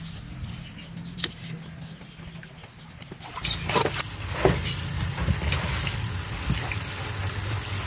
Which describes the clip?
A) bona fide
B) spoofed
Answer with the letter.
A